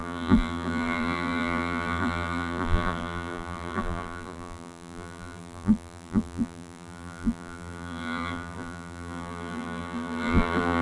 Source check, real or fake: fake